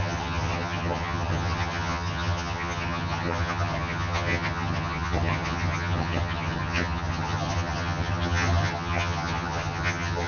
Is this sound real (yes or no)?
no